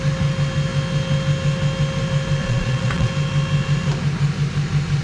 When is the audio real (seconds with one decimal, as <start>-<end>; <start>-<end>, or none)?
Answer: 0.0-2.4; 3.1-5.0

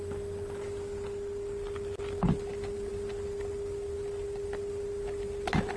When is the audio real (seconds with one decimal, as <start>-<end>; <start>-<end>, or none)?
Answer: 0.0-5.8